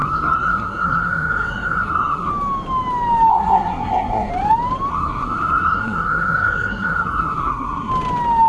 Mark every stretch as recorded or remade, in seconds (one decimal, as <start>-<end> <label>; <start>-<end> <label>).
0.0-2.3 remade; 2.3-3.3 recorded; 3.3-4.3 remade; 4.3-4.9 recorded; 4.9-7.9 remade; 7.9-8.5 recorded